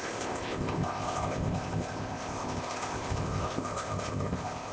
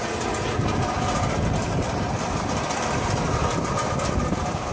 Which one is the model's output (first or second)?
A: first